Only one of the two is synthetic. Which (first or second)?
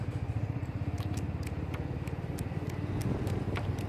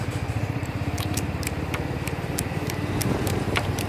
second